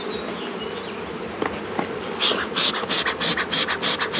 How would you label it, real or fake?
real